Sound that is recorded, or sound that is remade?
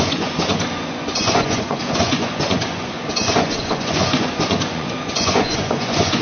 remade